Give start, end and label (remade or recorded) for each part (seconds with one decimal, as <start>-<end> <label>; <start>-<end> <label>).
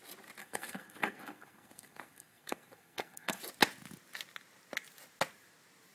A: 0.0-0.4 recorded; 0.4-3.4 remade; 3.4-5.9 recorded